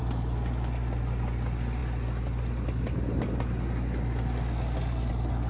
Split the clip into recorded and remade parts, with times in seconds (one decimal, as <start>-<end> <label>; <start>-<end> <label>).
0.0-5.5 recorded